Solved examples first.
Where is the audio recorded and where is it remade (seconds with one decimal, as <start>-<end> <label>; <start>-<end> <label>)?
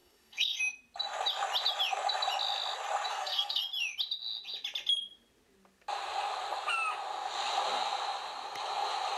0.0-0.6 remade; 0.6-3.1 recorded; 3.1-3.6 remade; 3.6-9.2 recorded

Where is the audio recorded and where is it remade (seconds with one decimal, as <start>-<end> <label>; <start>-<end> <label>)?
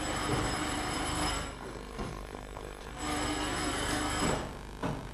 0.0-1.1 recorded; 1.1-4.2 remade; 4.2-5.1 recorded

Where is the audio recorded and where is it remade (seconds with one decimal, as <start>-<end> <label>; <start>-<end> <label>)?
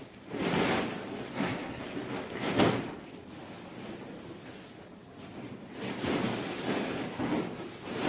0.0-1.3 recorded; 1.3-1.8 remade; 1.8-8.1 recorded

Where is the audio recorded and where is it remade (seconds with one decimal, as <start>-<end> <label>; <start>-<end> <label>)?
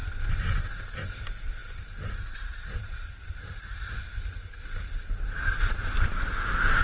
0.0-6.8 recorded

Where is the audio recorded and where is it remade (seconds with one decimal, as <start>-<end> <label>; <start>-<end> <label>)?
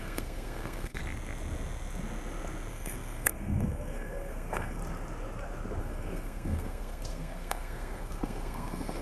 0.0-1.0 remade; 1.0-2.7 recorded; 2.7-4.8 remade; 4.8-5.8 recorded; 5.8-9.0 remade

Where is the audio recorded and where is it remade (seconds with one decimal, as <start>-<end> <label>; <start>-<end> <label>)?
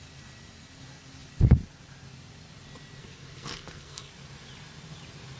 0.0-3.0 recorded; 3.0-4.1 remade; 4.1-5.4 recorded